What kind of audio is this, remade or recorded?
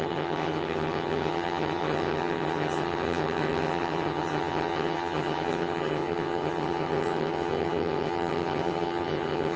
remade